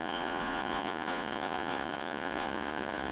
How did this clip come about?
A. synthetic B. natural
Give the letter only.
A